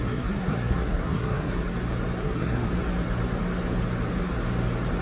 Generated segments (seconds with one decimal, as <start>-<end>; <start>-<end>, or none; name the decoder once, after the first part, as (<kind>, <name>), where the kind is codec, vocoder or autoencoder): 0.0-1.6 (codec, SNAC); 2.2-2.7